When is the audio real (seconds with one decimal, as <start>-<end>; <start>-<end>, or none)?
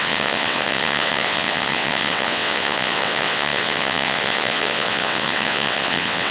none